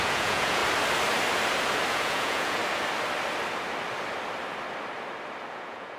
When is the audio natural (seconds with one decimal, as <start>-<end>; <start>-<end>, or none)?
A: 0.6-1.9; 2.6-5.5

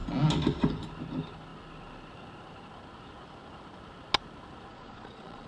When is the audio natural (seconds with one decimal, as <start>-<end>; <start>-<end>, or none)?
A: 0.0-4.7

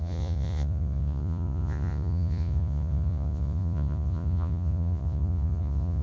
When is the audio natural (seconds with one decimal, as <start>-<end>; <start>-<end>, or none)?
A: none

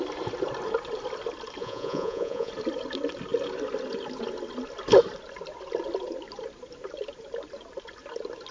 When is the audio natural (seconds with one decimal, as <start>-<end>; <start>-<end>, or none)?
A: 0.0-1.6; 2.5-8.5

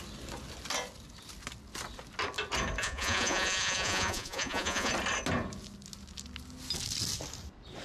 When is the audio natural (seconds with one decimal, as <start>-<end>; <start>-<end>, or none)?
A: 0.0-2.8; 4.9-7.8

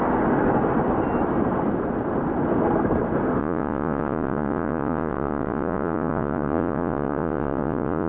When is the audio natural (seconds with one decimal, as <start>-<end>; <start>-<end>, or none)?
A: 0.0-3.4